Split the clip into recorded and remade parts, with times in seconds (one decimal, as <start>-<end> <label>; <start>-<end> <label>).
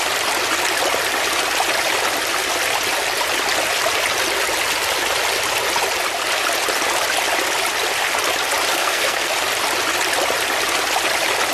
0.0-8.7 recorded; 8.7-9.3 remade; 9.3-11.5 recorded